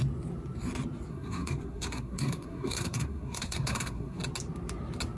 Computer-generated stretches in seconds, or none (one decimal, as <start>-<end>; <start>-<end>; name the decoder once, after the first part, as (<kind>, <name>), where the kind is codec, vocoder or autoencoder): 1.1-4.2 (codec, SNAC)